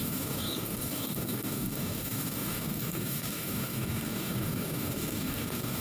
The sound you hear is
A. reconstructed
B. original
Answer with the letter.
A